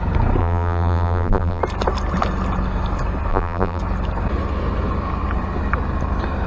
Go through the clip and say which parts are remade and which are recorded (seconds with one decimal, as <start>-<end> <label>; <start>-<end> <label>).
0.0-0.4 recorded; 0.4-1.6 remade; 1.6-3.3 recorded; 3.3-3.8 remade; 3.8-6.5 recorded